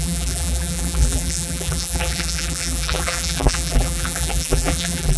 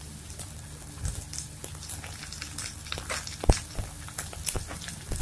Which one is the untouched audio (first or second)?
second